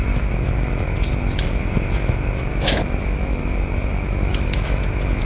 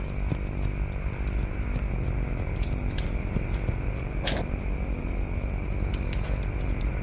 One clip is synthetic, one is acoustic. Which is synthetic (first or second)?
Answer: first